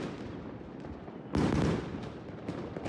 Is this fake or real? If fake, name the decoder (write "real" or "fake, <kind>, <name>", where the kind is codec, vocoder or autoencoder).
real